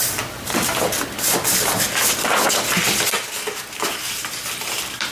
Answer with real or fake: real